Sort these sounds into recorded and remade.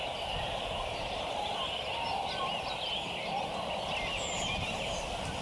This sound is recorded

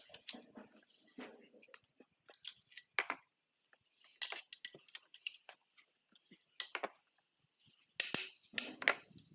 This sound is recorded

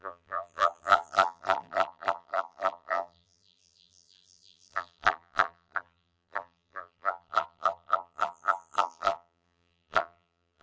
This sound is remade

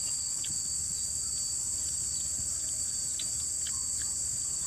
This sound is recorded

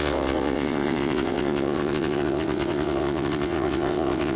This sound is remade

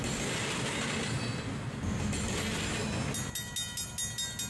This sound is recorded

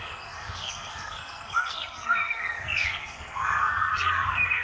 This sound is remade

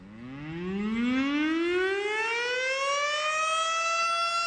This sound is recorded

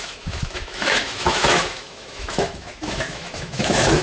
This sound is remade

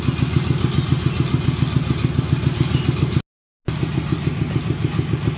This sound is recorded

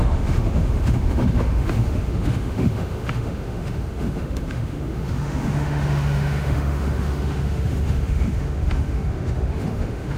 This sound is remade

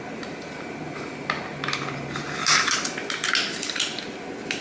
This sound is recorded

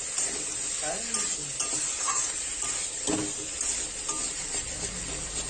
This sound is recorded